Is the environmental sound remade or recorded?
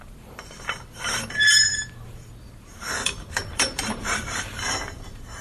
remade